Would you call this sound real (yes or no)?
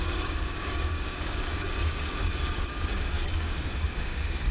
no